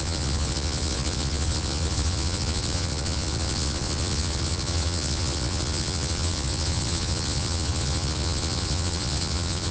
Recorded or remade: remade